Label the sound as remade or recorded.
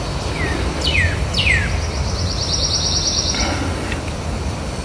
recorded